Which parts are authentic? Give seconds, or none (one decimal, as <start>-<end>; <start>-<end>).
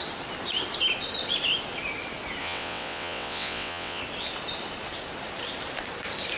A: 0.0-2.4; 4.0-6.4